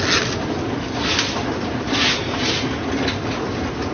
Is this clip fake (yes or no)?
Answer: no